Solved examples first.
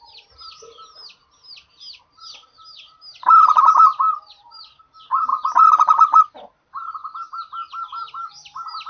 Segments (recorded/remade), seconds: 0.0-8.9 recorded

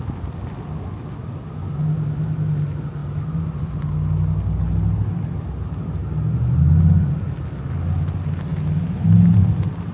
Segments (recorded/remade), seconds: 0.0-9.9 recorded

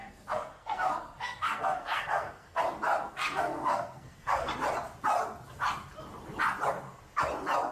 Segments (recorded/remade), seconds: 0.0-2.6 remade; 2.6-3.0 recorded; 3.0-4.5 remade; 4.5-7.7 recorded